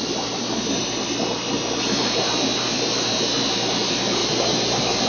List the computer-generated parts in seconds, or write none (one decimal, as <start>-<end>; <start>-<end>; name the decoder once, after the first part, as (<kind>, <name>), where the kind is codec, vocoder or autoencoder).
none